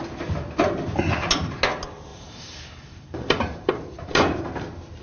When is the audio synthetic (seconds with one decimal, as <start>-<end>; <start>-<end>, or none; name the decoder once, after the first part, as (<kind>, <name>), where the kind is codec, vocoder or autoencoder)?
2.1-4.1 (vocoder, BigVGAN v2)